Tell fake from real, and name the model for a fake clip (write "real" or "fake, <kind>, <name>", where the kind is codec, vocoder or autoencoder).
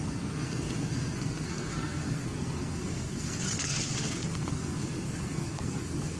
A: fake, codec, SNAC